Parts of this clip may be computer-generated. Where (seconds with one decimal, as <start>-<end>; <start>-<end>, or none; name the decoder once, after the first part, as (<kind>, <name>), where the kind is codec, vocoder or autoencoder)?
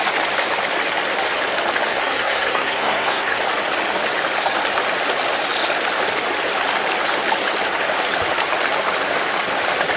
1.9-3.4 (codec, SNAC)